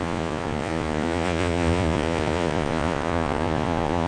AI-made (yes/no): yes